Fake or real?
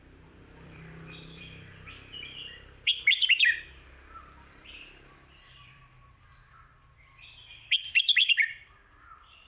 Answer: fake